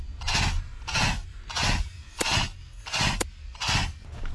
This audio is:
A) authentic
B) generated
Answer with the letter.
A